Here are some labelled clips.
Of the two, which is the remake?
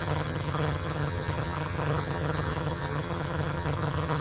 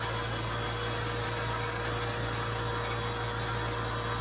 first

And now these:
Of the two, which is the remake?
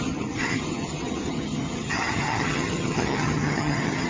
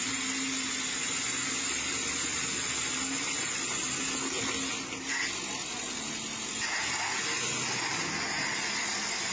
first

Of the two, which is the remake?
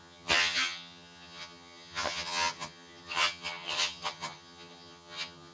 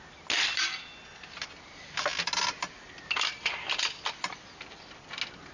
first